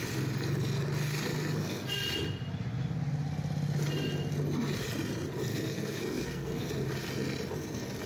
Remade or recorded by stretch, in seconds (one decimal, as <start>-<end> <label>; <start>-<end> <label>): 0.0-1.3 recorded; 1.3-1.9 remade; 1.9-5.5 recorded; 5.5-6.7 remade; 6.7-8.1 recorded